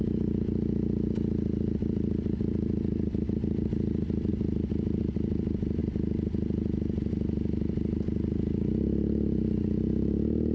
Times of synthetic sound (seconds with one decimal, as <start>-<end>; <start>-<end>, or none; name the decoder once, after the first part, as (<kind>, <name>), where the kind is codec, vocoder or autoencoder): none